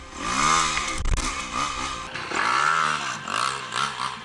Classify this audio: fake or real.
real